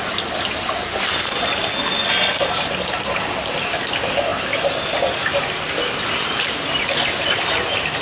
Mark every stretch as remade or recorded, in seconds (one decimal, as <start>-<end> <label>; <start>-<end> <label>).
0.0-8.0 recorded